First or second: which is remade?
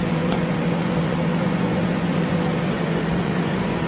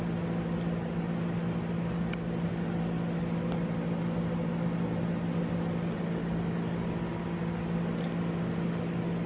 first